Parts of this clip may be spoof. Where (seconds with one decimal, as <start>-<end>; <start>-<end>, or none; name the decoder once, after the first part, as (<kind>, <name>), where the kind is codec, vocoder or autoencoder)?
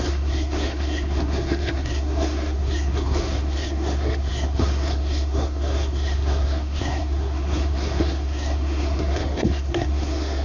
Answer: 0.0-10.4 (codec, SNAC)